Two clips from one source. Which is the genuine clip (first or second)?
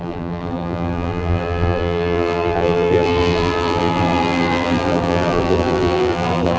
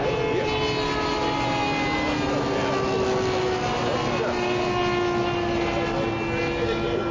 second